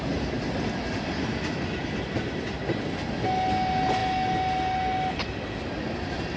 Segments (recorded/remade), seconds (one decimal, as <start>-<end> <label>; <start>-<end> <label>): 0.0-6.4 recorded

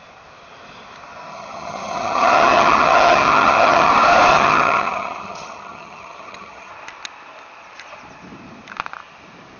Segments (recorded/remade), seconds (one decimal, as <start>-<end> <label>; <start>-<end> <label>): 0.0-1.3 recorded; 1.3-3.9 remade; 3.9-4.3 recorded; 4.3-6.7 remade; 6.7-9.6 recorded

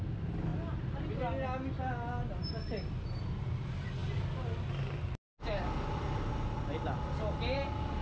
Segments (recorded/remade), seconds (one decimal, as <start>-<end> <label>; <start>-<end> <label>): 0.0-8.0 recorded